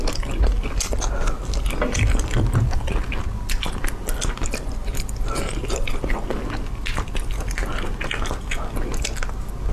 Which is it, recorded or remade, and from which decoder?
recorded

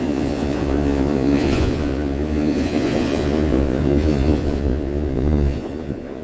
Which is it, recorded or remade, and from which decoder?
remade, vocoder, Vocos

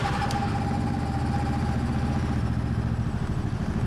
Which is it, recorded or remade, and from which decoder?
recorded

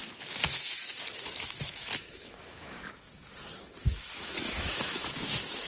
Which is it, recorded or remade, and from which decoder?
remade, autoencoder, DAC-VAE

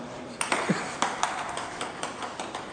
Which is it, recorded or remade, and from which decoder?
remade, vocoder, BigVGAN v2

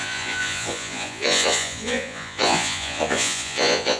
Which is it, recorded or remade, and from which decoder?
remade, vocoder, Vocos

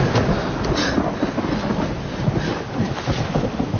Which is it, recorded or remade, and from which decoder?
recorded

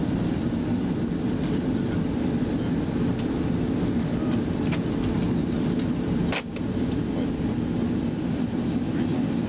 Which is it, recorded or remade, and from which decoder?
recorded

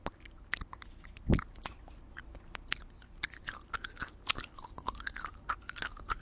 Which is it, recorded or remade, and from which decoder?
recorded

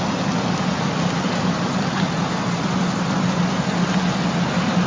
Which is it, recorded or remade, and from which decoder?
recorded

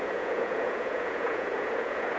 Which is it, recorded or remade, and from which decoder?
remade, vocoder, Vocos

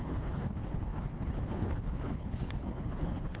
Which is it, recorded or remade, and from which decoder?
remade, codec, HILCodec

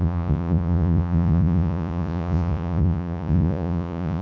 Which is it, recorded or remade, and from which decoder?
remade, vocoder, Vocos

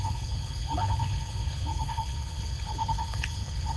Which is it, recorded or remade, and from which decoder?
remade, codec, HILCodec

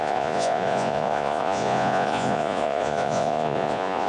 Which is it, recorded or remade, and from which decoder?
remade, vocoder, Vocos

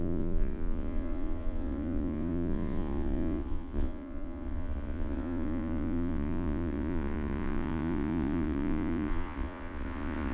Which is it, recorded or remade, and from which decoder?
remade, vocoder, Vocos